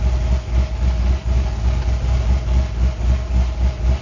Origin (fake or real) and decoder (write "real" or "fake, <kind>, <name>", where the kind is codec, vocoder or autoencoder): real